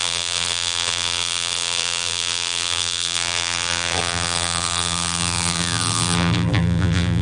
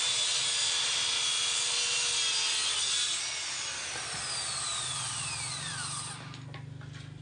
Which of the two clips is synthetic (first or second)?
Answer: first